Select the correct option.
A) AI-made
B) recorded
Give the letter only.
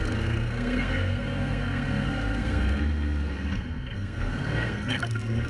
A